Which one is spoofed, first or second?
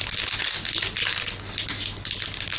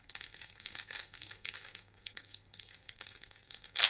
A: second